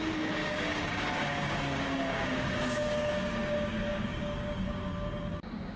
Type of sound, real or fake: fake